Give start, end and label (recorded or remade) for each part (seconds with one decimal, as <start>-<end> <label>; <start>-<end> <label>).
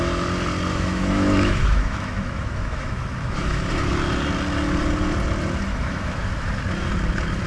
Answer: 0.0-0.7 recorded; 0.7-3.7 remade; 3.7-5.7 recorded; 5.7-6.5 remade; 6.5-7.5 recorded